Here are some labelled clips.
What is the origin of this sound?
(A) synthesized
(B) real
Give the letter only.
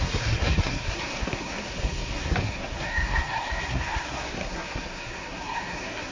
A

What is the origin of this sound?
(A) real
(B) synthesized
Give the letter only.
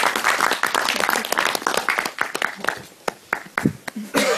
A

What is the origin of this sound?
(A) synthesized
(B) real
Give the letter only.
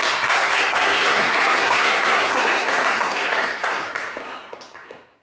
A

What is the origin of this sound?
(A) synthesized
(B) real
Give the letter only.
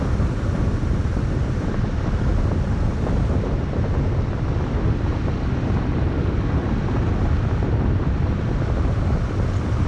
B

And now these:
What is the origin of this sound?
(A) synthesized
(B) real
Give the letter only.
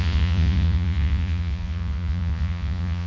A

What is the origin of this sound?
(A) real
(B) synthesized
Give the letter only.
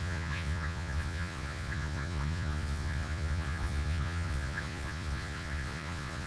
B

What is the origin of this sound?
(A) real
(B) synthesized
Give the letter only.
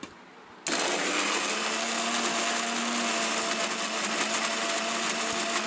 A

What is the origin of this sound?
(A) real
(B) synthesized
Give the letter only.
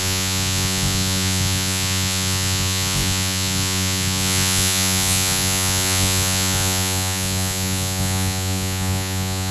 B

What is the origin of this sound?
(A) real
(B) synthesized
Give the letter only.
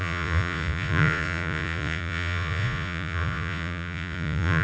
B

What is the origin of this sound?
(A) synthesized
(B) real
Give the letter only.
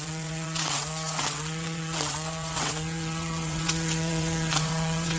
A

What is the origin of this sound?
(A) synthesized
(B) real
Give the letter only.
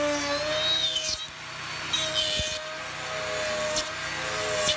B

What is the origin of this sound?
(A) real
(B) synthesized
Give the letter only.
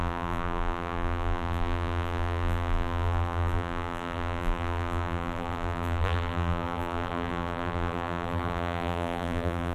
B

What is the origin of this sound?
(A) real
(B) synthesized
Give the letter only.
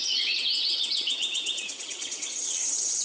B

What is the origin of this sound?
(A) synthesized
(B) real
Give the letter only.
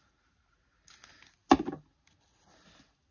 B